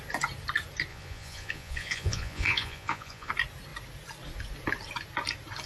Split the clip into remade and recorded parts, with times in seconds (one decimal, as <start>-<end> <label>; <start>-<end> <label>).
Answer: 0.0-0.9 recorded; 0.9-3.3 remade; 3.3-5.7 recorded